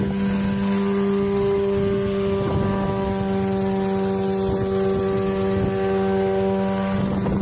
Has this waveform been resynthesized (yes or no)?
no